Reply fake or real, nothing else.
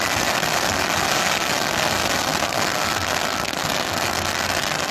real